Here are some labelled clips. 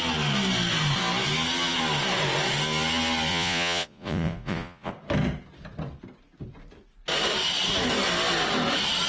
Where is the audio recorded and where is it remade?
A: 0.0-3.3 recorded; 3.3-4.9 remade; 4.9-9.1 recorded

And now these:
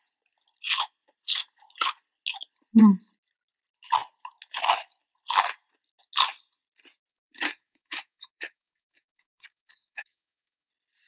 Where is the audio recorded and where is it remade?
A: 0.0-7.1 recorded; 7.1-10.7 remade; 10.7-11.1 recorded